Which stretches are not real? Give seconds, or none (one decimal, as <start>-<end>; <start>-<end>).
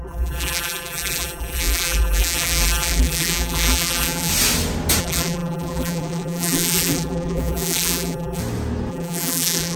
0.0-4.3; 5.0-8.4; 8.9-9.8